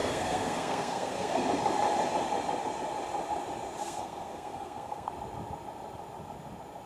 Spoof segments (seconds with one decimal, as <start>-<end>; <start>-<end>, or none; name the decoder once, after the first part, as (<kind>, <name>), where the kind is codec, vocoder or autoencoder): 0.0-1.4 (codec, SNAC); 3.8-5.1